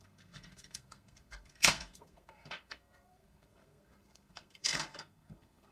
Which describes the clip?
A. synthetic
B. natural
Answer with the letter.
A